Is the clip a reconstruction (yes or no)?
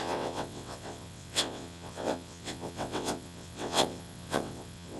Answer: yes